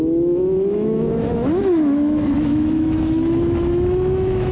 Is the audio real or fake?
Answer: fake